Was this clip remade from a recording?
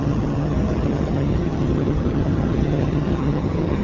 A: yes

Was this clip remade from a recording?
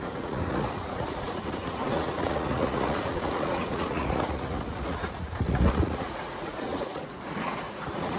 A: yes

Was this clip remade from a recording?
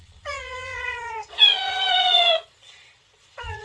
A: yes